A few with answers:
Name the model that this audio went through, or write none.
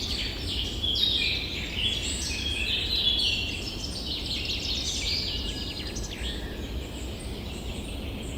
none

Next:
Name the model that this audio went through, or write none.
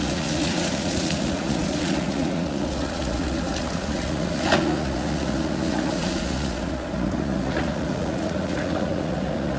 vocoder, Vocos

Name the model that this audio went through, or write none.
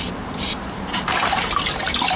none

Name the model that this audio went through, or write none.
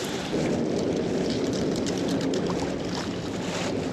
none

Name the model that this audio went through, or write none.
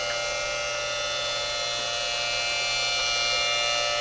none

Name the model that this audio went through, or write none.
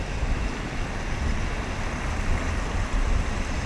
none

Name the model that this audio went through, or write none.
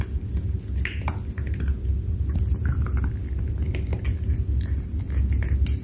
none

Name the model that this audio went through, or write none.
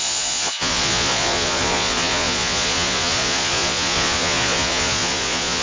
vocoder, Vocos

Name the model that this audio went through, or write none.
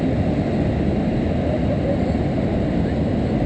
none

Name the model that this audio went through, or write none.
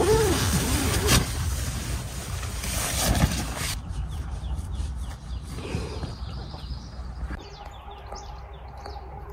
none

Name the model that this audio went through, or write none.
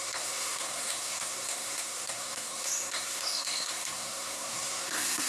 codec, SNAC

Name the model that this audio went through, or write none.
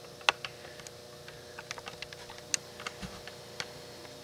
none